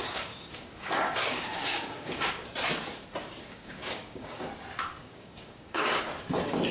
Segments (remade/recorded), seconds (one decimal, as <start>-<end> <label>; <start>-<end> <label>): 0.0-2.4 remade; 2.4-3.4 recorded; 3.4-4.5 remade; 4.5-5.0 recorded; 5.0-5.9 remade; 5.9-6.7 recorded